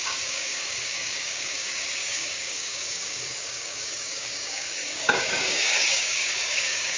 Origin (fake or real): fake